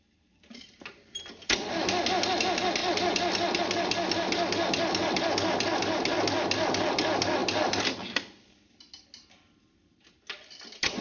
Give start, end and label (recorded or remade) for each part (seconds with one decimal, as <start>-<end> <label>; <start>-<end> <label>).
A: 0.0-11.0 recorded